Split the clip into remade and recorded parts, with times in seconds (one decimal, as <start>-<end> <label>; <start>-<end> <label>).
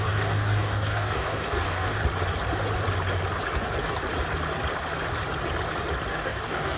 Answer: 0.0-2.0 remade; 2.0-6.1 recorded; 6.1-6.8 remade